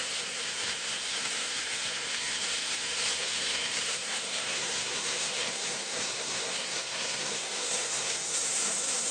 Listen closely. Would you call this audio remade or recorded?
remade